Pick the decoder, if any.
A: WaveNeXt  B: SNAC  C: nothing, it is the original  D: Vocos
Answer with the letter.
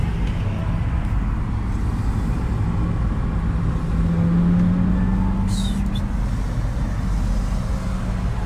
C